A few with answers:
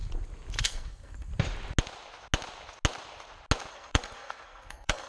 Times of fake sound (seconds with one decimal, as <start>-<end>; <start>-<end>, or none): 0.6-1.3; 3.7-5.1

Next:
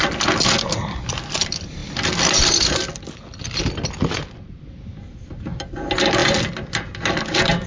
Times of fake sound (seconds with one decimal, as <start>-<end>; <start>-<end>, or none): none

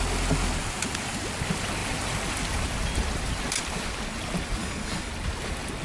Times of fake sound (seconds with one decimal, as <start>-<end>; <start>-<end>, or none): 4.6-5.1

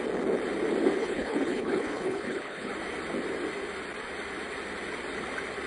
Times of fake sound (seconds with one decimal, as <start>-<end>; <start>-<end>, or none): 1.0-2.7

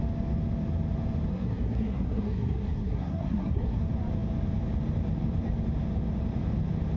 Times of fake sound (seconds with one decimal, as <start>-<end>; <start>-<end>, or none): 1.3-3.8

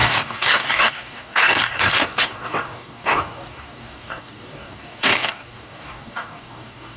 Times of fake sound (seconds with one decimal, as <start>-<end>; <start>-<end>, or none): 0.0-7.0